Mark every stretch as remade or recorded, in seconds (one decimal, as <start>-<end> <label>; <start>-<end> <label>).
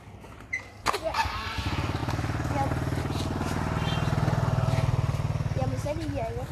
0.0-6.5 recorded